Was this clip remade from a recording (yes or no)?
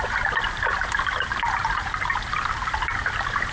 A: no